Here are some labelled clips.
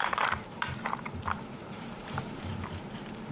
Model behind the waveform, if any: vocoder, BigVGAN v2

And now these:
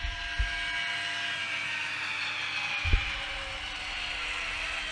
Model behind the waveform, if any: none